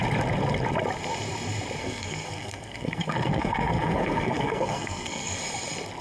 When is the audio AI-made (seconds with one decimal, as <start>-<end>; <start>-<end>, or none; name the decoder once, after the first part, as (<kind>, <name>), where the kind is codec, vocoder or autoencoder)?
1.8-5.4 (codec, SNAC)